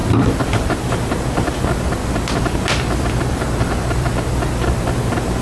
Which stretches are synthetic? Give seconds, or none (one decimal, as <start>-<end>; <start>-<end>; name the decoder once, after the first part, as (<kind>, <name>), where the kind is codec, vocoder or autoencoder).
0.0-0.8 (vocoder, BigVGAN v2); 2.0-4.1